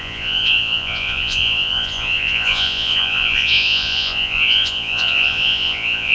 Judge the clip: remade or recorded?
remade